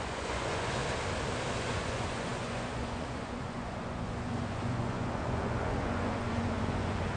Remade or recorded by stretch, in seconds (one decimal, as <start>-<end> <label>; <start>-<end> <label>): 0.0-0.8 remade; 0.8-1.6 recorded; 1.6-7.2 remade